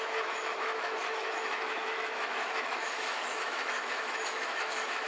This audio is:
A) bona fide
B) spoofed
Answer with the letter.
B